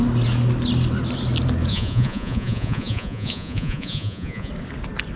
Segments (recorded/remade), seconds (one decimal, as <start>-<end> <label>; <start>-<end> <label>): 0.0-1.7 recorded; 1.7-4.5 remade; 4.5-5.2 recorded